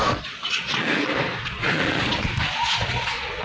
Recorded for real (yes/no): no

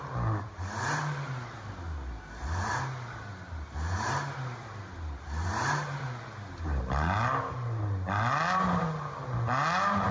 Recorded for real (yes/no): yes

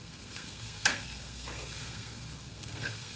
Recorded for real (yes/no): no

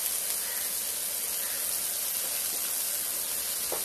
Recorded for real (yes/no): yes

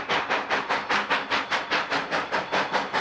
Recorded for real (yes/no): yes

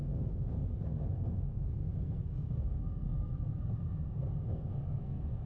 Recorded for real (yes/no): no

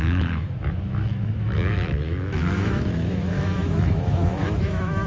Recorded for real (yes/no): no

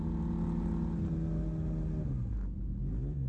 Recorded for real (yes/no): yes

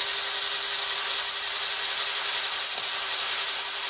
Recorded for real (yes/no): yes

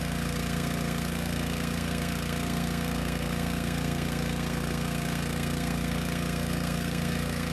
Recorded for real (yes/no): no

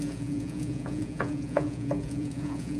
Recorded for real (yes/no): no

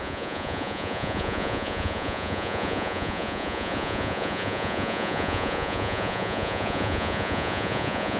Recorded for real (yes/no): no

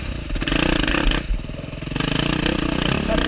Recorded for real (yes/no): yes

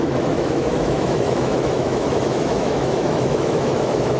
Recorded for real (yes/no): no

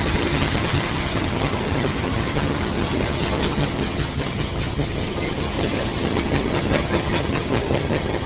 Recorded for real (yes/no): no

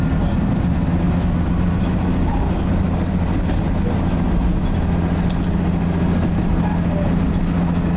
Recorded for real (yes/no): yes